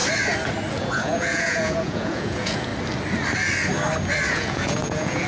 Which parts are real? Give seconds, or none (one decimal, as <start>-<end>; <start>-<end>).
0.0-0.7; 2.7-4.3